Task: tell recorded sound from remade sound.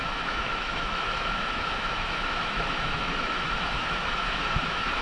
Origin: remade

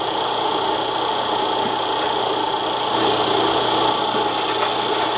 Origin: recorded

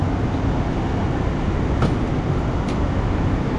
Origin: recorded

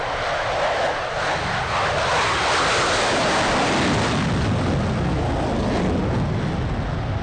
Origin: recorded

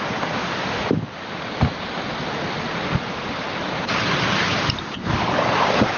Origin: recorded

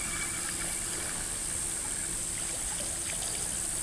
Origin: recorded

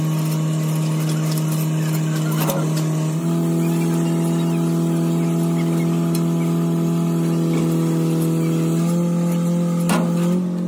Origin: recorded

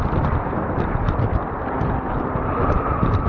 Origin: remade